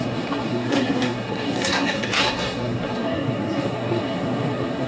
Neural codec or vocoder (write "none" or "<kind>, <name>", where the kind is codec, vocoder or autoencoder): codec, SNAC